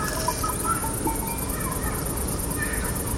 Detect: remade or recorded recorded